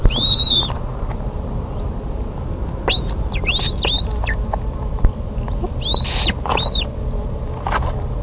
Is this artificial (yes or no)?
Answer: no